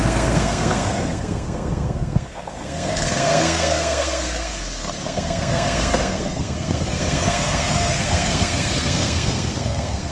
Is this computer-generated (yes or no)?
yes